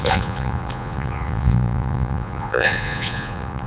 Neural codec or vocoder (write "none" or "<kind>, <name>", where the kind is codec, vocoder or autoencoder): vocoder, Vocos